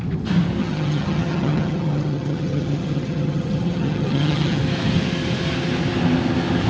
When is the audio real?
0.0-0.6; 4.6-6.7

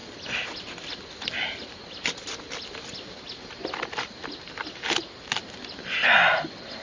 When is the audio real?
0.0-6.8

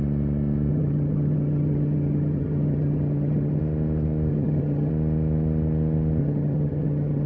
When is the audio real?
0.0-0.7; 3.6-4.3; 4.9-6.2